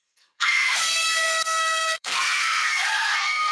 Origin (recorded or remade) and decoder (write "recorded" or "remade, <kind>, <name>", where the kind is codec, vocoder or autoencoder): remade, codec, SNAC